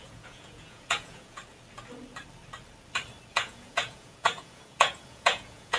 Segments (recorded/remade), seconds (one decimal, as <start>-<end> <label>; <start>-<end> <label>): 0.0-1.4 remade; 1.4-3.3 recorded; 3.3-5.8 remade